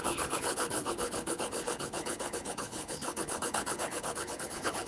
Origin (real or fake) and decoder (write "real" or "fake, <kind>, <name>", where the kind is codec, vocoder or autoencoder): fake, codec, HILCodec